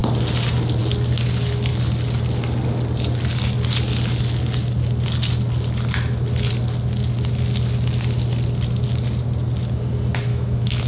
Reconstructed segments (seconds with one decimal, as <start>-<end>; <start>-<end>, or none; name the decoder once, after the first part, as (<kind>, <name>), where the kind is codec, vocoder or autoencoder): 10.3-10.9 (autoencoder, DAC-VAE)